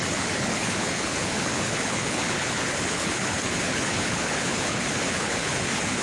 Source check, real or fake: fake